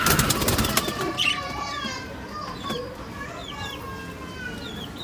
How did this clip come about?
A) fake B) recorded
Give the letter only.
B